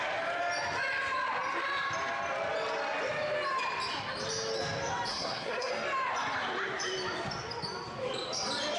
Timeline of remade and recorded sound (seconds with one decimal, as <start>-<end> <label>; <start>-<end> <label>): 0.0-5.1 recorded; 5.1-5.7 remade; 5.7-8.8 recorded